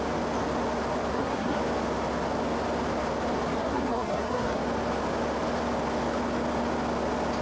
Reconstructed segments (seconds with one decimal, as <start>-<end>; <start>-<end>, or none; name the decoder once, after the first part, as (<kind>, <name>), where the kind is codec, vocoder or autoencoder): 1.1-1.6 (codec, SNAC); 3.6-4.6